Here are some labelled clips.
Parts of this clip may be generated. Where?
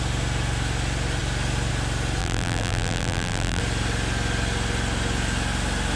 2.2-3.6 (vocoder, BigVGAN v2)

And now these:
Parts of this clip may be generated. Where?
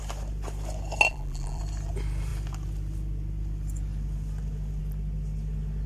1.1-1.6 (vocoder, BigVGAN v2)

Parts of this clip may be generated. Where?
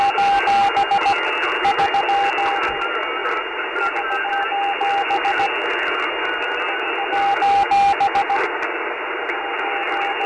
3.2-4.3 (vocoder, BigVGAN v2)